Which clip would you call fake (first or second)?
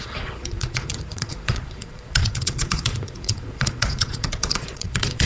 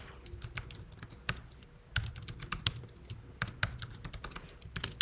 first